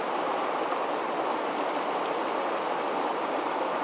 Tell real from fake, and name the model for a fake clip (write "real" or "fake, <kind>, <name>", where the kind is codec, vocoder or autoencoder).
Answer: real